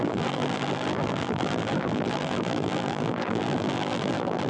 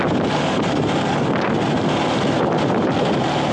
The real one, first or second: second